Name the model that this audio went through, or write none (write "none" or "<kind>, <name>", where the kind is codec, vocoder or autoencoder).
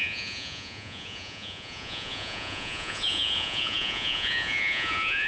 vocoder, Vocos